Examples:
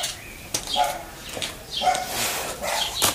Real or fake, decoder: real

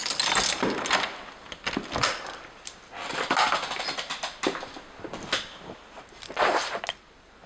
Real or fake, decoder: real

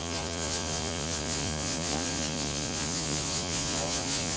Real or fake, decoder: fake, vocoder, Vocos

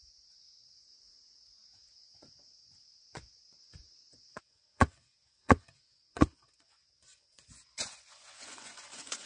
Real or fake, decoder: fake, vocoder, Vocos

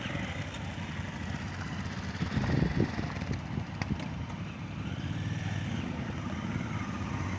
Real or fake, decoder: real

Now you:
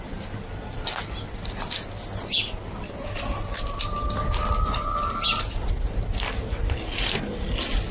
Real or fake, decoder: real